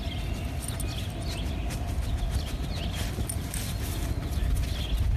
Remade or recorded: recorded